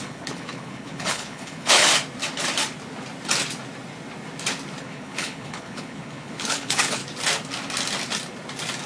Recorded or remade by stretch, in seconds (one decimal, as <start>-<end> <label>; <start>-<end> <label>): 0.0-1.9 remade; 1.9-4.8 recorded; 4.8-7.0 remade; 7.0-8.9 recorded

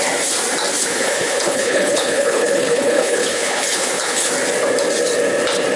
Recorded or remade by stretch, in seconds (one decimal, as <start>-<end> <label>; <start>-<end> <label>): 0.0-0.8 recorded; 0.8-4.3 remade; 4.3-5.8 recorded

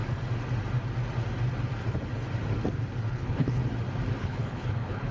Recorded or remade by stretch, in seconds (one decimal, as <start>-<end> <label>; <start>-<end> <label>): 0.0-3.1 recorded; 3.1-3.6 remade; 3.6-4.2 recorded; 4.2-5.1 remade

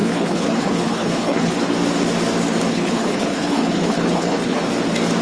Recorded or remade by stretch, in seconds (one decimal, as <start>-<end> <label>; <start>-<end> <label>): 0.0-1.6 remade; 1.6-2.7 recorded; 2.7-4.6 remade; 4.6-5.2 recorded

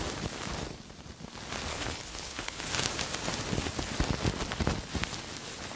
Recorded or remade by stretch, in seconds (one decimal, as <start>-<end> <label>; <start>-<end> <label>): 0.0-1.7 recorded; 1.7-2.6 remade; 2.6-5.8 recorded

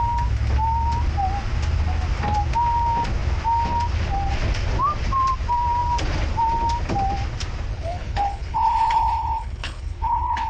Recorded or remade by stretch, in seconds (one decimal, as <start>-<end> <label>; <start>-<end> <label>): 0.0-7.7 recorded; 7.7-10.5 remade

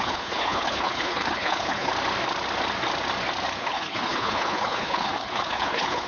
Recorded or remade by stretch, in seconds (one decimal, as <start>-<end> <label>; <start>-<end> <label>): 0.0-1.9 remade; 1.9-3.6 recorded; 3.6-6.1 remade

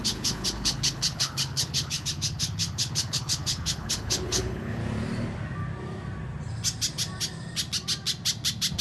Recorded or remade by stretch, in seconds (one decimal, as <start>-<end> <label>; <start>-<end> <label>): 0.0-4.8 remade; 4.8-8.8 recorded